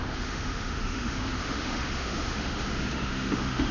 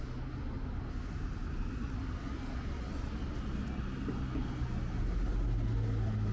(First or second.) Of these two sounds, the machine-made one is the first